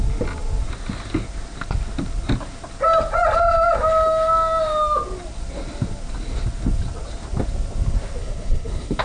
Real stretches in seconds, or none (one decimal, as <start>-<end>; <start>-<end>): 0.0-8.2